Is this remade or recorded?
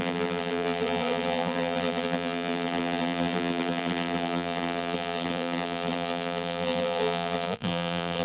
remade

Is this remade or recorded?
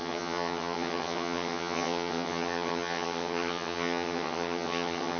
remade